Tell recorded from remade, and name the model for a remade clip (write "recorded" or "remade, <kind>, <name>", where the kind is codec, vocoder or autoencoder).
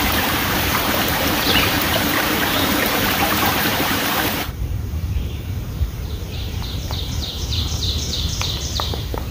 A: remade, vocoder, BigVGAN v2